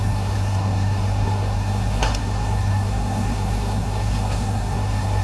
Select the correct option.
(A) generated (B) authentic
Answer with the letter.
A